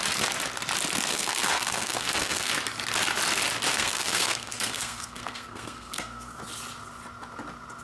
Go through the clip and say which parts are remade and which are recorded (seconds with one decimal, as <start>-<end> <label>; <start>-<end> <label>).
0.0-1.1 recorded; 1.1-2.5 remade; 2.5-3.7 recorded; 3.7-6.4 remade; 6.4-7.8 recorded